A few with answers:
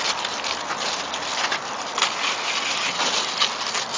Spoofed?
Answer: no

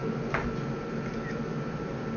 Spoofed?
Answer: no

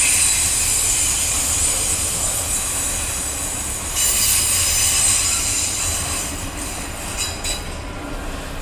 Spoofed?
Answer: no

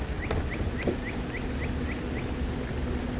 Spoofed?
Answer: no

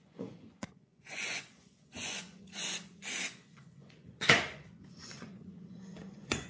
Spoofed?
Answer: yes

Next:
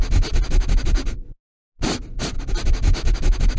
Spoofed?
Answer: no